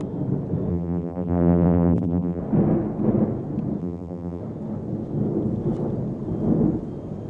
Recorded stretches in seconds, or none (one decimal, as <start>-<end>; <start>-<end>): 0.0-0.7; 2.4-3.8; 4.4-7.3